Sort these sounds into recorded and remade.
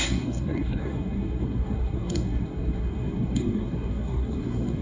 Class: remade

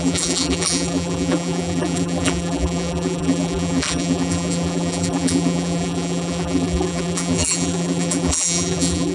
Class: remade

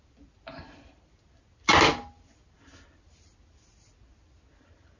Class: recorded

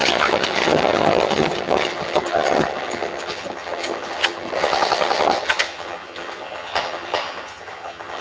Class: remade